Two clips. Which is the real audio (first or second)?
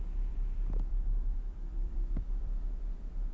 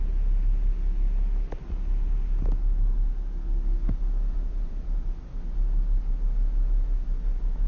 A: second